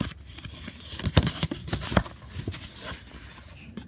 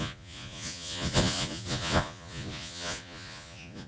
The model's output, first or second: second